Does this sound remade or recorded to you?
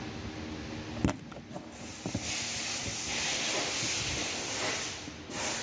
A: recorded